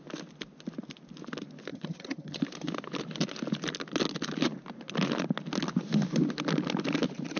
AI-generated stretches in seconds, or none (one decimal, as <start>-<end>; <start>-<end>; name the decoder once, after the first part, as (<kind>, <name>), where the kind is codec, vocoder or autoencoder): 1.7-2.4 (vocoder, HiFi-GAN)